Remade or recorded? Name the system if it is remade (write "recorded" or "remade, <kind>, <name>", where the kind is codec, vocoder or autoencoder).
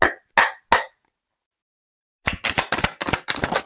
recorded